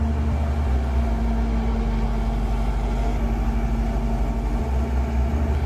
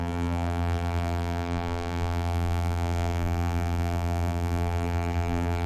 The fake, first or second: second